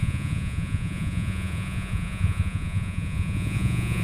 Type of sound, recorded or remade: remade